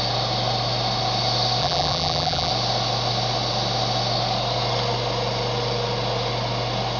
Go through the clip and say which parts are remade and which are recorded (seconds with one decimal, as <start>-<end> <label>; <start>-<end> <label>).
0.0-1.6 recorded; 1.6-2.5 remade; 2.5-7.0 recorded